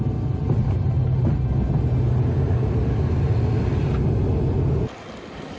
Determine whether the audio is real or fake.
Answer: real